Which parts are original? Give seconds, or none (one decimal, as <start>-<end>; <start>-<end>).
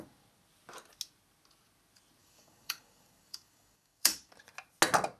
0.0-2.2; 4.3-5.2